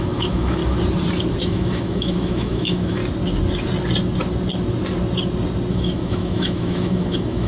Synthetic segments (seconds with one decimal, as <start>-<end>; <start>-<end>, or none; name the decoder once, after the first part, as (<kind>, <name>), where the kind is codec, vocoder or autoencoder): 0.0-0.6 (autoencoder, DAC-VAE); 1.4-3.0; 5.7-7.5